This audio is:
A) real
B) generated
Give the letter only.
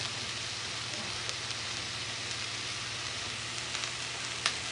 A